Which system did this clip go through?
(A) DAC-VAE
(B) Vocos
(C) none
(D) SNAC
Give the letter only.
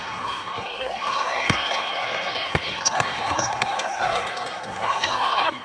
D